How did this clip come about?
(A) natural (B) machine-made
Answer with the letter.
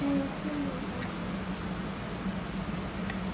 A